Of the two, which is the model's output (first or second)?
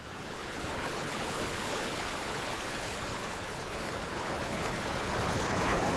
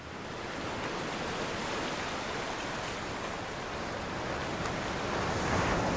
first